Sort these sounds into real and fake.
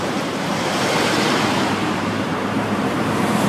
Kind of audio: fake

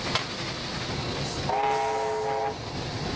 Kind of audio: real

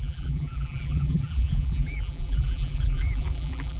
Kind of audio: fake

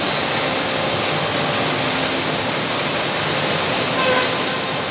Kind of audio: real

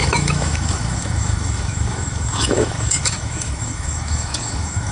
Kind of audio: fake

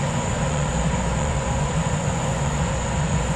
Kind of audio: fake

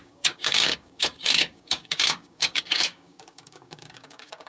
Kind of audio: fake